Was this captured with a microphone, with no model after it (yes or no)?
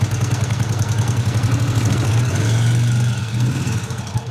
no